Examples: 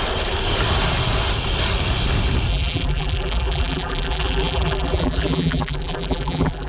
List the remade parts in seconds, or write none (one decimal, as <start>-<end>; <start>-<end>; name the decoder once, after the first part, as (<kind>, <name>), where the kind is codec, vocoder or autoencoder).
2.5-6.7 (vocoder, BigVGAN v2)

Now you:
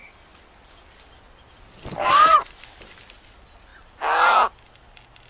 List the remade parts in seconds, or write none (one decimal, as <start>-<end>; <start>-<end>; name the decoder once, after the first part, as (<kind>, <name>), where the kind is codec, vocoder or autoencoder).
none

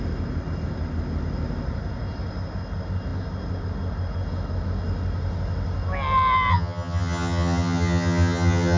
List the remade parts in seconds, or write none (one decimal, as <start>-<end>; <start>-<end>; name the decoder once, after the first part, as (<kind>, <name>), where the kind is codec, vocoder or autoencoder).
6.5-8.8 (vocoder, HiFi-GAN)

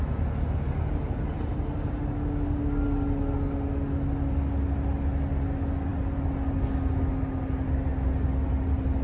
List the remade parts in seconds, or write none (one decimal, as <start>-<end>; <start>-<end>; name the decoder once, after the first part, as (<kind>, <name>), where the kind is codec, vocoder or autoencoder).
none